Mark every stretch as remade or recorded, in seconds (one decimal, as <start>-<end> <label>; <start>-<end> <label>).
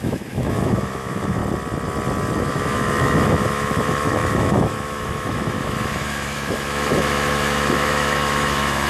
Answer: 0.0-1.4 remade; 1.4-2.4 recorded; 2.4-8.9 remade